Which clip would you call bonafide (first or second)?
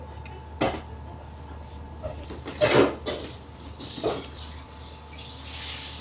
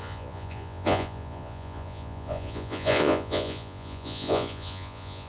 first